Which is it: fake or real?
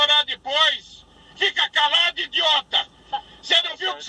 real